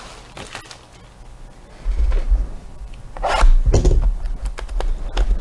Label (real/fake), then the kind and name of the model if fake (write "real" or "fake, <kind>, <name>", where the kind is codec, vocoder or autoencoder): real